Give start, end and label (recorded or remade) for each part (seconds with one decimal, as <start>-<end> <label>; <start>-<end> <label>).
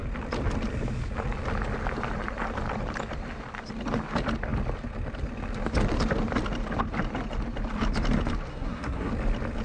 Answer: 0.0-8.5 recorded; 8.5-9.1 remade; 9.1-9.6 recorded